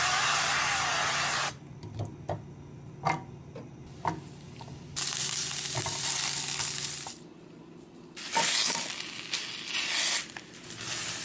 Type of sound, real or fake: real